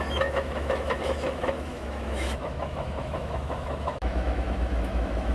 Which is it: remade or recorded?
remade